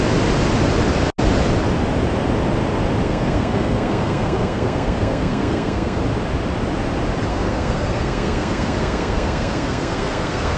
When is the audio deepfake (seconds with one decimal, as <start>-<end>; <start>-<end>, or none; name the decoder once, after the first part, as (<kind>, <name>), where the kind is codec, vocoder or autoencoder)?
3.0-6.0 (codec, SNAC); 7.3-10.6